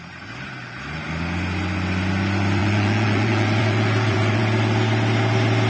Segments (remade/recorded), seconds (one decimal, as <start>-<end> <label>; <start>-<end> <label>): 0.0-2.6 recorded; 2.6-4.4 remade; 4.4-5.7 recorded